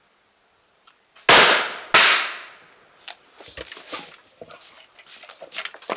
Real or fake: real